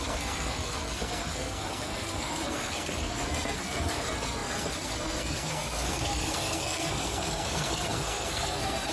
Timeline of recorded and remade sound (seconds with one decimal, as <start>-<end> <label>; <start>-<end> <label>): 0.0-8.9 remade